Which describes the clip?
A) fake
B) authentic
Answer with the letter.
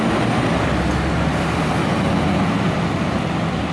B